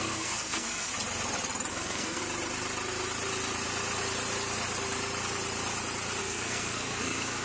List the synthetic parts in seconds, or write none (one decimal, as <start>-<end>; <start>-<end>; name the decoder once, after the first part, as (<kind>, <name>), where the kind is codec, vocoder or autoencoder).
0.0-0.9 (codec, SNAC); 1.7-2.2; 6.2-7.4